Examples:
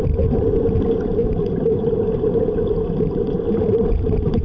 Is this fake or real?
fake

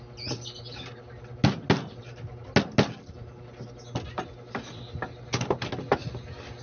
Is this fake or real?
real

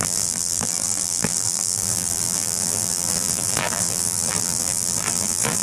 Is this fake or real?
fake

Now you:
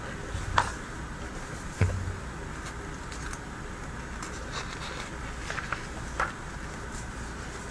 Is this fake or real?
real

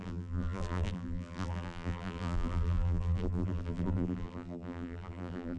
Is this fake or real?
fake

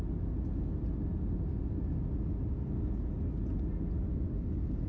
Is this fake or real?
real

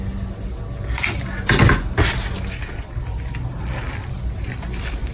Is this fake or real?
real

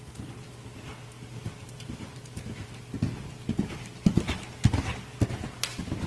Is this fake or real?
real